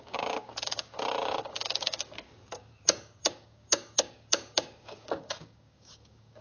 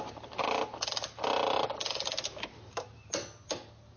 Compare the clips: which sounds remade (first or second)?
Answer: first